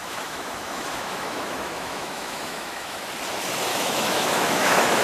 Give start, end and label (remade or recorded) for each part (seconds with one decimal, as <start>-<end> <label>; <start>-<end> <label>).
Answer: 0.0-3.0 remade; 3.0-3.7 recorded; 3.7-5.0 remade